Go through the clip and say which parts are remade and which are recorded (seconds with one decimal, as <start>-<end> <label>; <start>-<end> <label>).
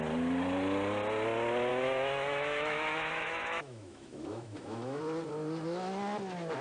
0.0-1.7 recorded; 1.7-5.0 remade; 5.0-6.6 recorded